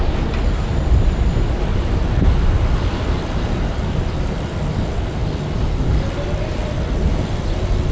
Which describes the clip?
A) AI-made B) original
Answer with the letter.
B